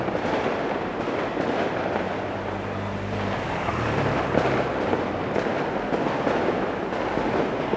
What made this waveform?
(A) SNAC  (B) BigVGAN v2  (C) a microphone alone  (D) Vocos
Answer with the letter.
C